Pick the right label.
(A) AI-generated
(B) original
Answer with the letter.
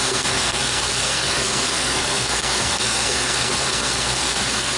A